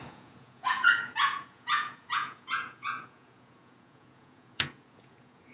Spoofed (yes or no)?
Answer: yes